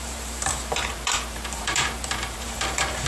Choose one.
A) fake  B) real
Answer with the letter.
A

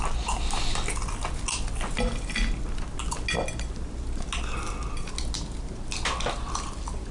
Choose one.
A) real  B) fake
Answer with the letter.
A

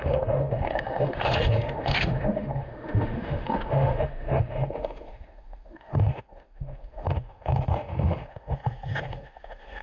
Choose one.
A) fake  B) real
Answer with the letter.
A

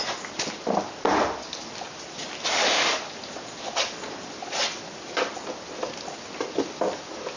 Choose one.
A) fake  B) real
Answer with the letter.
B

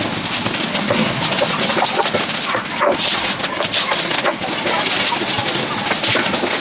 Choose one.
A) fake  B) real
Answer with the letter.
B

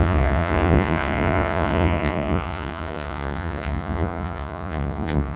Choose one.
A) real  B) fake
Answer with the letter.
B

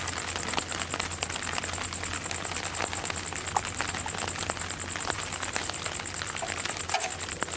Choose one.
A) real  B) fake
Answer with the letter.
A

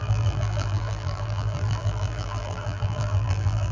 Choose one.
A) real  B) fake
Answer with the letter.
B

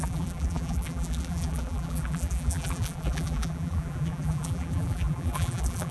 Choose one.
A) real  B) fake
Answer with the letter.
B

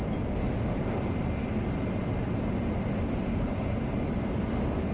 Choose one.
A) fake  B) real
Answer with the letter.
B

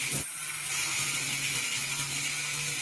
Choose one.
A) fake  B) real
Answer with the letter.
B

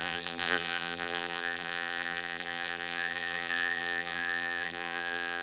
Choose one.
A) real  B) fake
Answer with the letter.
B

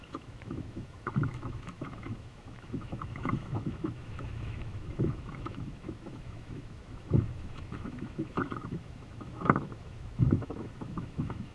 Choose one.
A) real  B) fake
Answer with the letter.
B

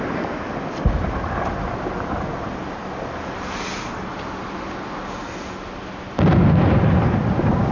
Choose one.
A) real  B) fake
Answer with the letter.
A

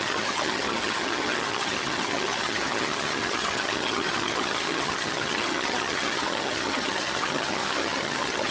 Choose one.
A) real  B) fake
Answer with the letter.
B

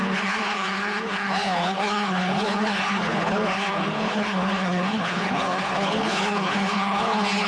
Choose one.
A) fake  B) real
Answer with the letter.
A